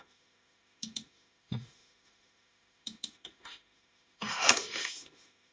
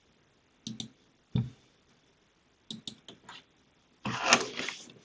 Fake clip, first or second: first